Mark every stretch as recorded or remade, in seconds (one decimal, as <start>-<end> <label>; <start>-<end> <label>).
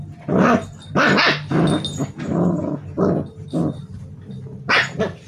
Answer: 0.0-5.3 recorded